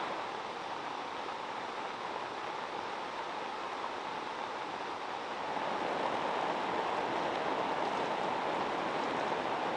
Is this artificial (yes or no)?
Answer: no